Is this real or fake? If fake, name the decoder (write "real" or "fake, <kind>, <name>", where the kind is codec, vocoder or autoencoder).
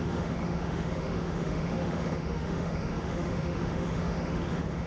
fake, autoencoder, DAC-VAE